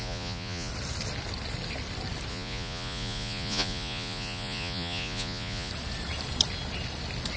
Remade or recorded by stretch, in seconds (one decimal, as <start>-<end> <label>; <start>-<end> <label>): 0.0-0.7 remade; 0.7-2.3 recorded; 2.3-5.7 remade; 5.7-7.4 recorded